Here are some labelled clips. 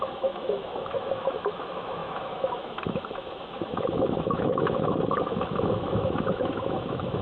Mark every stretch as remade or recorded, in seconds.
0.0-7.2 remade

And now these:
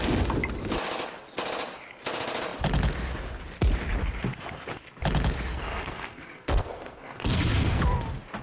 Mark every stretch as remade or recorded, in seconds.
0.0-5.5 recorded; 5.5-7.8 remade; 7.8-8.4 recorded

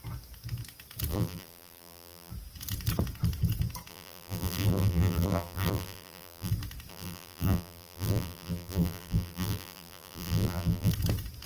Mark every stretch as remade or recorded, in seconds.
0.0-1.1 recorded; 1.1-2.3 remade; 2.3-3.9 recorded; 3.9-6.5 remade; 6.5-6.9 recorded; 6.9-10.9 remade; 10.9-11.5 recorded